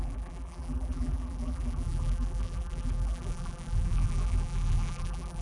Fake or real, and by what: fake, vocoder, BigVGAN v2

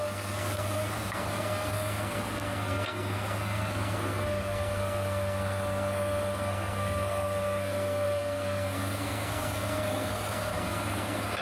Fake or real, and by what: fake, codec, SNAC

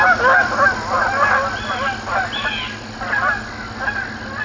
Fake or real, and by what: real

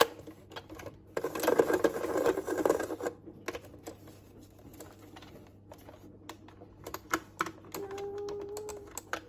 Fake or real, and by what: real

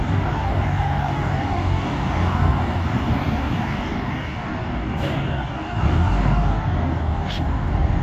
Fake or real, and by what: fake, codec, DAC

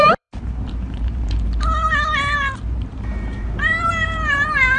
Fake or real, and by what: fake, vocoder, BigVGAN v2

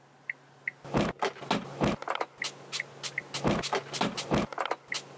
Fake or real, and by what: real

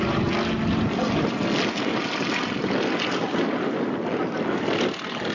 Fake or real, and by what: real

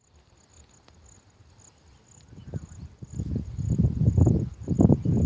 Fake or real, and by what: real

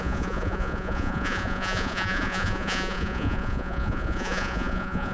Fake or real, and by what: fake, vocoder, Vocos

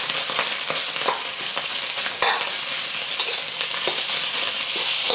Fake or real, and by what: real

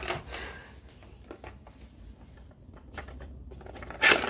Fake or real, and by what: fake, vocoder, BigVGAN v2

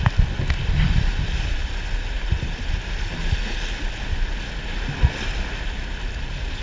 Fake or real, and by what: real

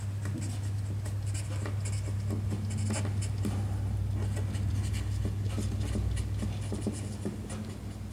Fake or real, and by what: real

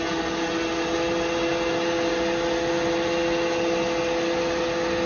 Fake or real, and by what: real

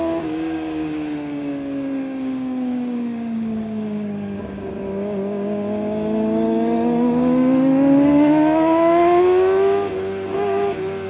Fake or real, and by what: fake, codec, DAC